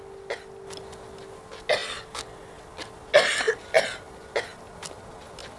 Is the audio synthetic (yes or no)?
no